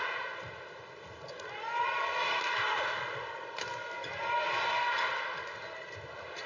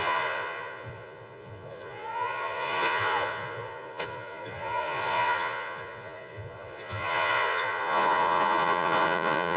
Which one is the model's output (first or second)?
second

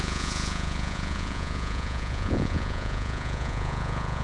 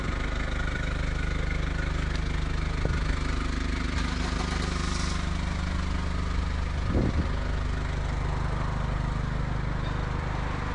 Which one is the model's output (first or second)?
first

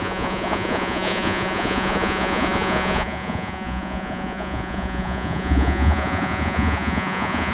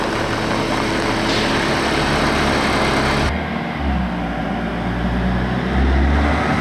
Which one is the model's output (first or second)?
first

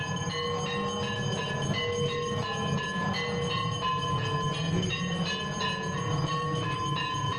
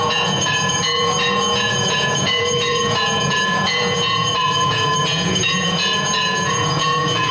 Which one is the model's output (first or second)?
second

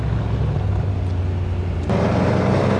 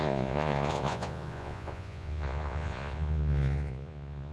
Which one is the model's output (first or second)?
second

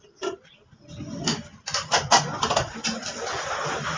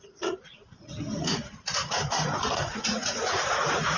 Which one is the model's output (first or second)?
second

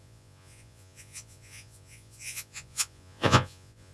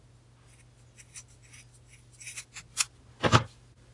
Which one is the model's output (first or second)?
first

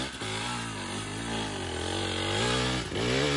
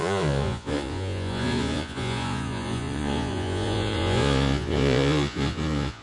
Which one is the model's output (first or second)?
second